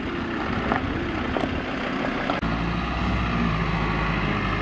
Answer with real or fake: real